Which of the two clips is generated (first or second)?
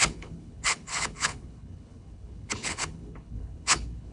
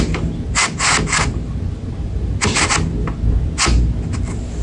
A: first